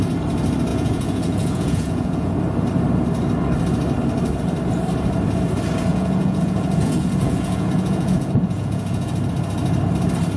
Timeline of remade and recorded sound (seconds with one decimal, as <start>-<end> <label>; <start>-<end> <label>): 0.0-0.7 recorded; 0.7-2.3 remade; 2.3-5.9 recorded; 5.9-9.1 remade; 9.1-10.4 recorded